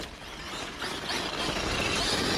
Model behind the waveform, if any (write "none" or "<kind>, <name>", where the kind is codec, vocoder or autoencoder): none